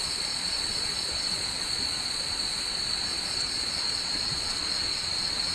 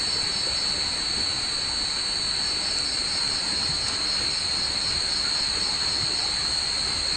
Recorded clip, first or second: second